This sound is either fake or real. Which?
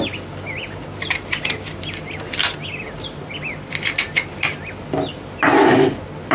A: real